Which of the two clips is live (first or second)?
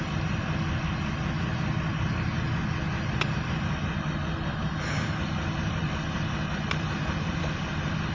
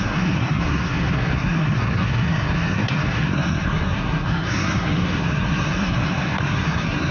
first